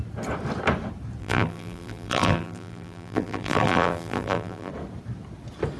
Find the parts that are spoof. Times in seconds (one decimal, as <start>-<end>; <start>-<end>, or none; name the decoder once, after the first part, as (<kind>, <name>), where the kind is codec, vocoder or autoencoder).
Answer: 1.2-4.7 (vocoder, BigVGAN v2)